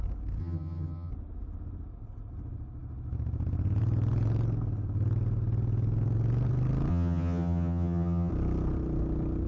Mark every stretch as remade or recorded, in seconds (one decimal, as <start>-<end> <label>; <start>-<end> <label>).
0.0-0.4 recorded; 0.4-1.1 remade; 1.1-6.9 recorded; 6.9-8.3 remade; 8.3-9.5 recorded